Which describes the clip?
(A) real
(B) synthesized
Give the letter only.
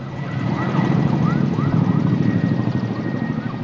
A